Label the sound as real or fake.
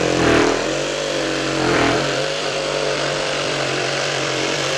fake